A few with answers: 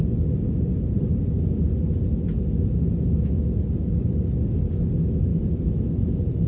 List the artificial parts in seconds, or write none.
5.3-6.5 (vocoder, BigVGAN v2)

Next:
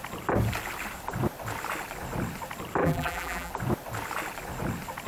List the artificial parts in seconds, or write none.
2.8-3.5 (vocoder, BigVGAN v2)